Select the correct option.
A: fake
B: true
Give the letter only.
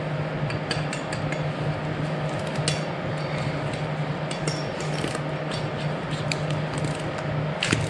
B